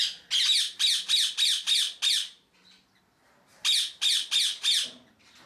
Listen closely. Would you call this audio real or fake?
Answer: real